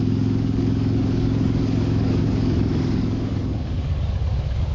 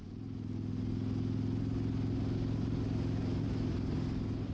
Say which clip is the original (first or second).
second